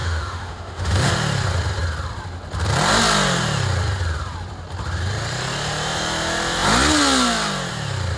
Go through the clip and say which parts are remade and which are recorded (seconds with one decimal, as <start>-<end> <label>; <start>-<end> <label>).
0.0-1.1 remade; 1.1-8.2 recorded